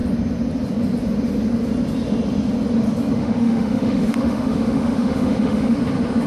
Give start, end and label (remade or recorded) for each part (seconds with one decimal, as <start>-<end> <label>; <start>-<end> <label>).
0.0-3.2 recorded; 3.2-5.8 remade; 5.8-6.3 recorded